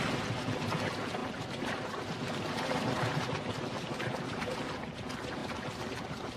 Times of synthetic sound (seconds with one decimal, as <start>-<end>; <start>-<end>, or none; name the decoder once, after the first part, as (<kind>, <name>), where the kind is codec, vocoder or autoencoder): 1.2-4.4 (vocoder, BigVGAN v2); 5.4-6.0